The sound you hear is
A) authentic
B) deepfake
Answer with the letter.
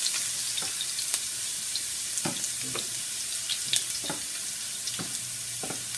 A